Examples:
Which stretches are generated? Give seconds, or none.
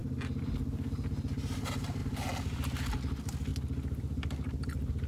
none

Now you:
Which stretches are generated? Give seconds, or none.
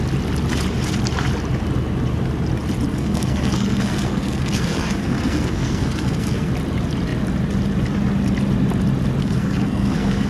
2.9-6.5 (codec, SNAC); 9.2-10.3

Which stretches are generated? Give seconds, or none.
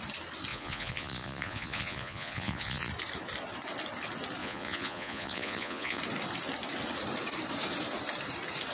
0.5-2.9 (vocoder, Vocos); 4.4-6.0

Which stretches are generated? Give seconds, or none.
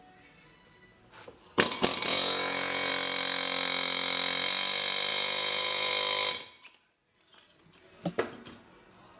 2.1-2.9 (vocoder, Vocos); 5.1-5.9